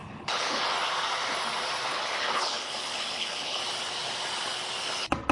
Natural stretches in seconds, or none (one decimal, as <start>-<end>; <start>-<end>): 0.6-1.9; 3.6-5.3